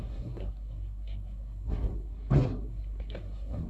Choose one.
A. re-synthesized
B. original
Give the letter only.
A